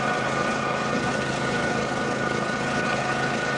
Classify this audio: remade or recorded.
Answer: remade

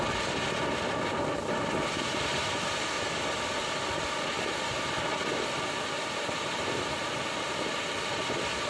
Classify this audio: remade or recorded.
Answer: recorded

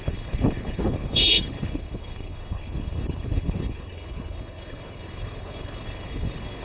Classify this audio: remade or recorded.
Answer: remade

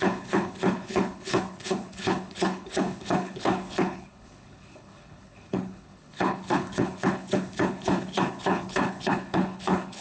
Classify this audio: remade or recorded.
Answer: remade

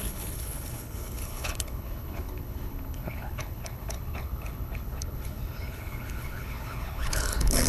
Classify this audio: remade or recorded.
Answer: remade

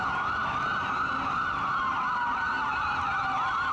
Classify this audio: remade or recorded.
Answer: recorded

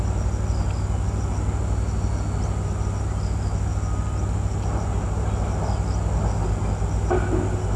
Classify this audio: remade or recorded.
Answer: recorded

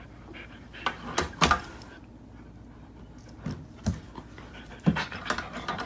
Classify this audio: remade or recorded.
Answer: recorded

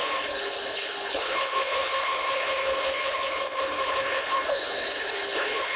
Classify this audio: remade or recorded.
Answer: remade